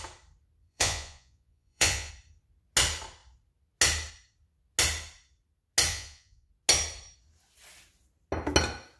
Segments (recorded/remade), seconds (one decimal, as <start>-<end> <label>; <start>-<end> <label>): 0.0-0.6 recorded; 0.6-2.1 remade; 2.1-5.9 recorded; 5.9-6.5 remade; 6.5-9.0 recorded